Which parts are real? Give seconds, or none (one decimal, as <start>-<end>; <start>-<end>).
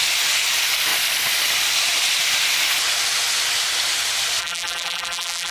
0.0-4.4